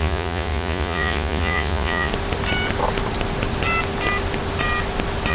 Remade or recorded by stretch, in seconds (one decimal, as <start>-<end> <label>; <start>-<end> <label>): 0.0-2.1 remade; 2.1-5.3 recorded